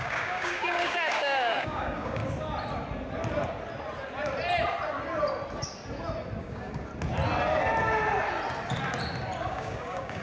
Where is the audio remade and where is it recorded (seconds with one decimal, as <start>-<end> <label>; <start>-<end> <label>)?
0.0-2.2 remade; 2.2-6.4 recorded; 6.4-6.9 remade; 6.9-9.4 recorded; 9.4-10.2 remade